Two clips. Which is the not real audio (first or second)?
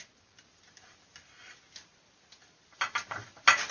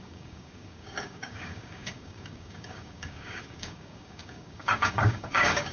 second